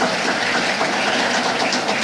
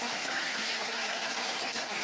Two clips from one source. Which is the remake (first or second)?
second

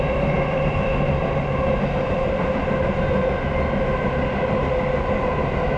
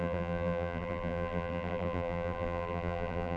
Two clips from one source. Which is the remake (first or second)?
second